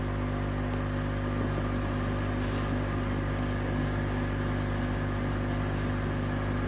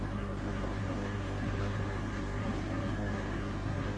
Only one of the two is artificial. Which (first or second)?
second